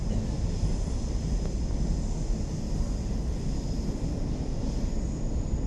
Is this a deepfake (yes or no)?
no